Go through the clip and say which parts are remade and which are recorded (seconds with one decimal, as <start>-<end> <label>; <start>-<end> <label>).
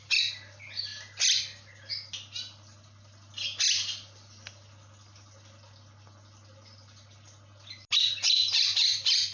0.0-9.3 recorded